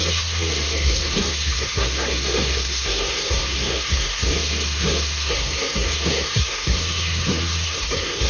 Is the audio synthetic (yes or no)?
yes